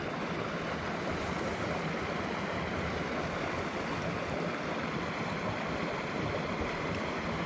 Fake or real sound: real